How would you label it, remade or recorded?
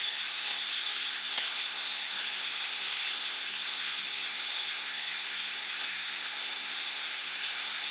remade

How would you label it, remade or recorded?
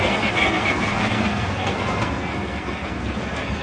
remade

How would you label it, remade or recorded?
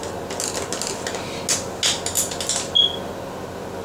recorded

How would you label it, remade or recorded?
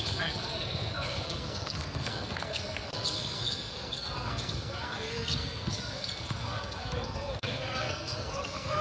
remade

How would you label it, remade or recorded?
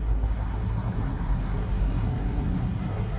remade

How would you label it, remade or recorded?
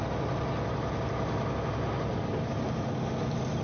recorded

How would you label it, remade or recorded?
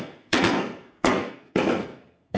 remade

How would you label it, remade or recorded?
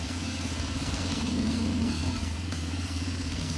remade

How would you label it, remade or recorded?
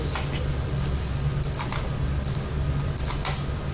recorded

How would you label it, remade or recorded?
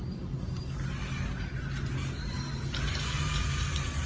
recorded